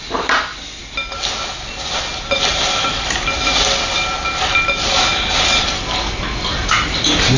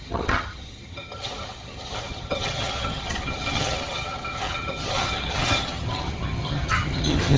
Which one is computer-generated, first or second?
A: second